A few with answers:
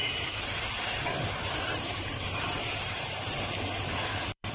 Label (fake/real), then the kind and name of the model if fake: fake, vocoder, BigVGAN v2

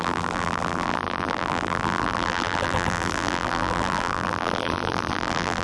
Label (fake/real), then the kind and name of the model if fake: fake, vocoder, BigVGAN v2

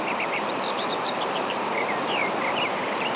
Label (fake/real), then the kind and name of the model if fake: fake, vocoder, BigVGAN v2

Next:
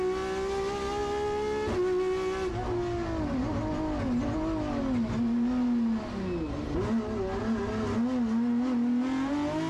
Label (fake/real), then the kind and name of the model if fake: real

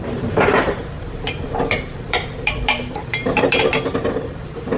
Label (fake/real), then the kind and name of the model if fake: fake, vocoder, BigVGAN v2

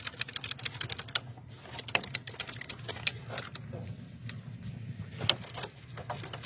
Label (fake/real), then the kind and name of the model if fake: real